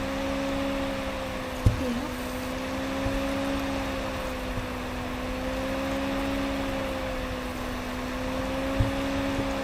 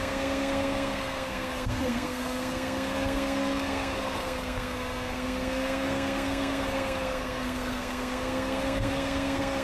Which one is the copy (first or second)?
second